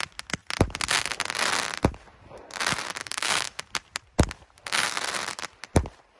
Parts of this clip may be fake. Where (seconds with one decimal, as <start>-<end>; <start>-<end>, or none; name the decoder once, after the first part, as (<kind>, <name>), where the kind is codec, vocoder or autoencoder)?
3.0-3.6 (codec, DAC)